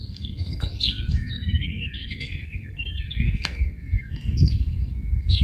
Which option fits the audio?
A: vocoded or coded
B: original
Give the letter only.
A